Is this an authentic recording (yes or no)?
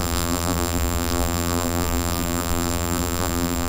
no